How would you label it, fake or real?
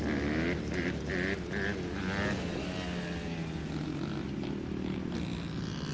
real